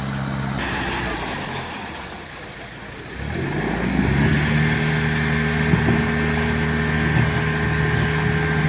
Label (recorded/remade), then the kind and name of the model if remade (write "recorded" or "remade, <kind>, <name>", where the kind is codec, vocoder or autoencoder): recorded